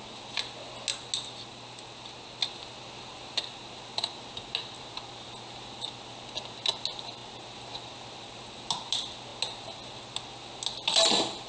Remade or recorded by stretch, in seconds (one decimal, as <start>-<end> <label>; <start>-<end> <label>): 0.0-11.5 recorded